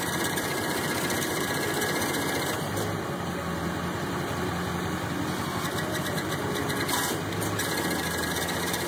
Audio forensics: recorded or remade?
recorded